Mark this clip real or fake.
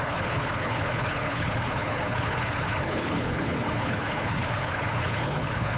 fake